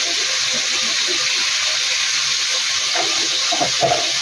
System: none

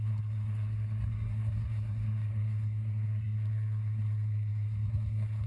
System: codec, SNAC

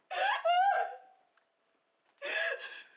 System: none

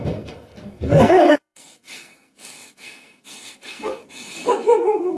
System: codec, SNAC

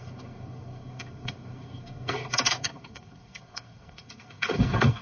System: codec, SNAC